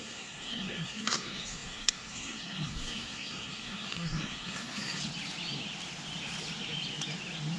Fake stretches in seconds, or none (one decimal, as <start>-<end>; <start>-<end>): 0.0-5.0